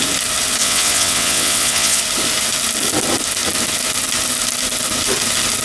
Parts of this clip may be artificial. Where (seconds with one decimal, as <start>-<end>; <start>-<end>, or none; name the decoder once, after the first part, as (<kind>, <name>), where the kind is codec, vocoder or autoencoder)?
0.6-2.0 (vocoder, WaveNeXt)